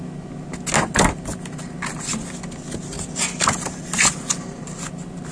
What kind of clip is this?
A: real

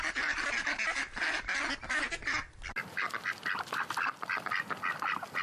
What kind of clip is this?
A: real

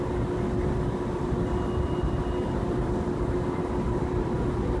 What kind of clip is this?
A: real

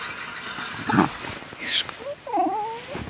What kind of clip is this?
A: real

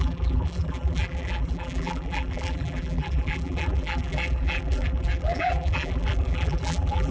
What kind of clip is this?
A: fake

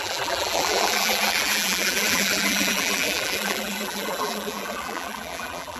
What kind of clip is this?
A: fake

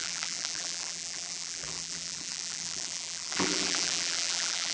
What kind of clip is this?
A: fake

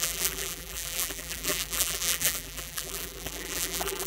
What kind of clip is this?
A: fake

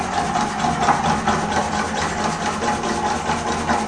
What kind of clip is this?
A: real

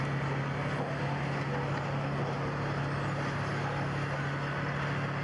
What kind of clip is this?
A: real